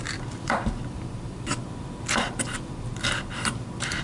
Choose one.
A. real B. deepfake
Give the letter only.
B